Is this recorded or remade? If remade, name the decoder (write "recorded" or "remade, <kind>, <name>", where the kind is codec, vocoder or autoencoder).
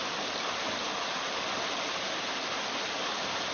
recorded